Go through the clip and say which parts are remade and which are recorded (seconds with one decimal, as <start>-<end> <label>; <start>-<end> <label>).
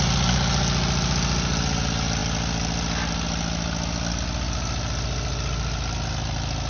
0.0-6.7 recorded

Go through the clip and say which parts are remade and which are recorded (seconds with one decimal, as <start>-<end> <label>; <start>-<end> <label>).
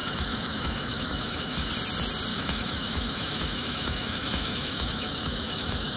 0.0-1.7 remade; 1.7-2.3 recorded; 2.3-6.0 remade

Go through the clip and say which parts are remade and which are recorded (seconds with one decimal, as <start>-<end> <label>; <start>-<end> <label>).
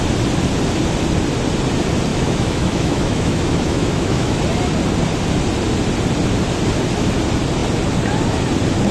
0.0-2.1 recorded; 2.1-4.4 remade; 4.4-8.9 recorded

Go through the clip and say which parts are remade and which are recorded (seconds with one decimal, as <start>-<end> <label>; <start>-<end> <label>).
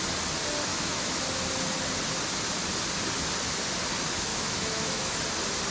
0.0-0.7 recorded; 0.7-1.2 remade; 1.2-4.3 recorded; 4.3-5.2 remade; 5.2-5.7 recorded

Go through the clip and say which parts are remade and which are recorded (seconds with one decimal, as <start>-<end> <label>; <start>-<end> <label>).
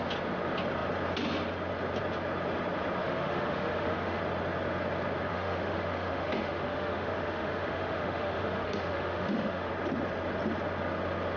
0.0-3.0 recorded; 3.0-4.2 remade; 4.2-5.3 recorded; 5.3-9.7 remade; 9.7-11.4 recorded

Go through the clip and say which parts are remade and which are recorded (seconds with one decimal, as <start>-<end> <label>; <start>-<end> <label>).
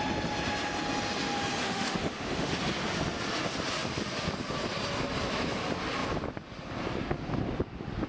0.0-1.6 recorded; 1.6-2.5 remade; 2.5-8.1 recorded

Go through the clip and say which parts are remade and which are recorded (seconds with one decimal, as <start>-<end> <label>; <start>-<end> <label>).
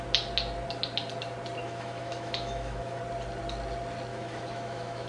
0.0-1.6 recorded; 1.6-3.0 remade; 3.0-4.1 recorded; 4.1-5.1 remade